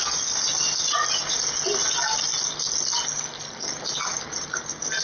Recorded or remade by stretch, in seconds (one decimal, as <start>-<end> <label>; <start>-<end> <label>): 0.0-5.0 recorded